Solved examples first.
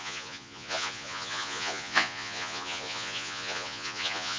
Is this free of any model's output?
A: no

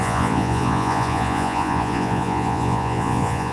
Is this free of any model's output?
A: no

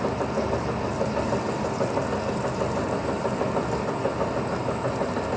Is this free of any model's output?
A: yes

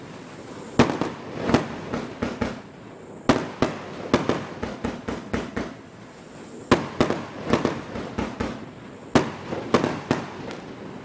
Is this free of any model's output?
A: yes